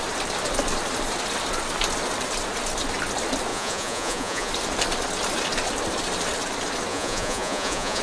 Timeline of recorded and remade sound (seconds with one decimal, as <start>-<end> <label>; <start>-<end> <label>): 0.0-3.5 recorded; 3.5-4.5 remade; 4.5-6.9 recorded; 6.9-8.0 remade